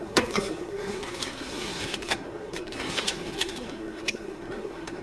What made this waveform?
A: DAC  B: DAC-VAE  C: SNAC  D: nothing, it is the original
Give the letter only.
C